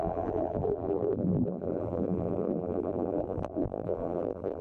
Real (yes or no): no